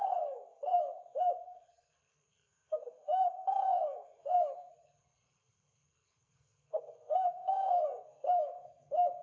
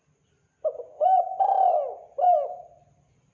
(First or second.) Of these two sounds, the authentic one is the second